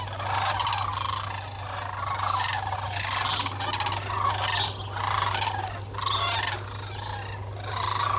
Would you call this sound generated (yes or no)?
no